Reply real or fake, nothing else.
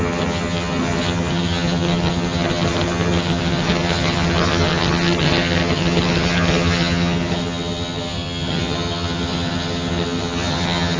fake